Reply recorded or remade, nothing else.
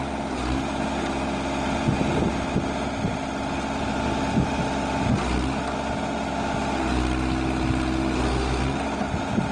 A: recorded